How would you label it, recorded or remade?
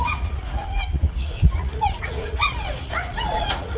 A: remade